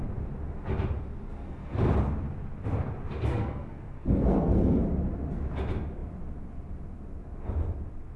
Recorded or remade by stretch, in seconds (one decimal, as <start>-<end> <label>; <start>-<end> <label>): 0.0-1.3 recorded; 1.3-1.8 remade; 1.8-3.3 recorded; 3.3-4.8 remade; 4.8-8.2 recorded

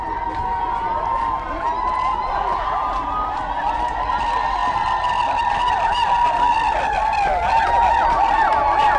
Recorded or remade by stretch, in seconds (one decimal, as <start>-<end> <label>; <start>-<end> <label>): 0.0-9.0 recorded

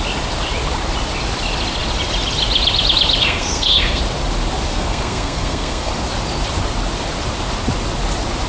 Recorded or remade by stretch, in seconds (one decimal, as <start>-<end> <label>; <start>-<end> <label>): 0.0-3.2 recorded; 3.2-4.0 remade; 4.0-4.7 recorded; 4.7-5.9 remade; 5.9-8.5 recorded

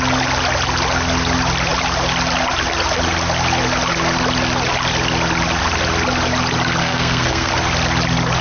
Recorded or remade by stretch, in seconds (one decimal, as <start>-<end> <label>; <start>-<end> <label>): 0.0-6.8 recorded; 6.8-7.5 remade; 7.5-8.4 recorded

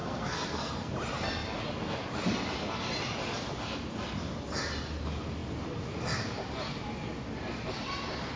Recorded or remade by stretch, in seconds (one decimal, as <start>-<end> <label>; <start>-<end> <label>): 0.0-0.9 remade; 0.9-8.4 recorded